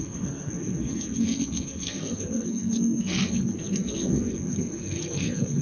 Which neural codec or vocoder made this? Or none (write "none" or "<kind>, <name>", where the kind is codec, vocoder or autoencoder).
codec, SNAC